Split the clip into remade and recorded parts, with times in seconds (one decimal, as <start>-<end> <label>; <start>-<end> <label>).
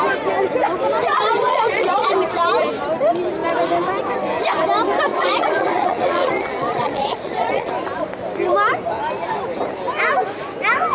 0.0-1.1 recorded; 1.1-2.1 remade; 2.1-5.1 recorded; 5.1-7.7 remade; 7.7-10.9 recorded